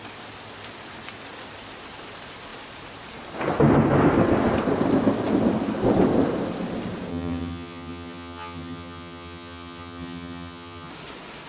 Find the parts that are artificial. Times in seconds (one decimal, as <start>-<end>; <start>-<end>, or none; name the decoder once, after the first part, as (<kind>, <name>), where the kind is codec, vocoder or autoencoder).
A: 7.1-10.9 (vocoder, HiFi-GAN)